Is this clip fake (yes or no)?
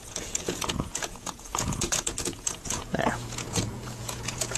yes